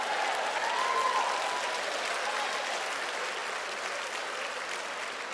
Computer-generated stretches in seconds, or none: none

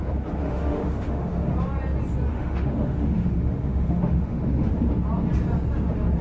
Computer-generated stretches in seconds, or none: 0.4-1.5 (autoencoder, DAC-VAE); 2.3-4.7

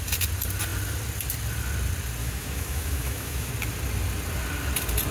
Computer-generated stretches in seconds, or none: 2.2-3.5 (autoencoder, DAC-VAE)

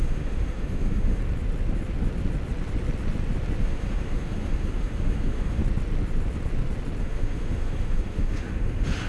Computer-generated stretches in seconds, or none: 0.0-1.2 (autoencoder, DAC-VAE); 3.6-5.6; 7.0-9.1

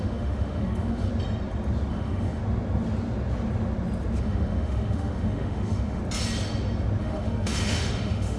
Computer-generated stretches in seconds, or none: 0.0-1.1 (autoencoder, DAC-VAE); 1.9-2.4; 4.2-6.0; 7.0-8.4

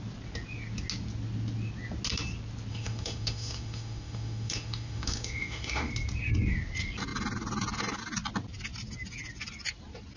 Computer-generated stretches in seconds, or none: 2.7-5.9 (autoencoder, DAC-VAE)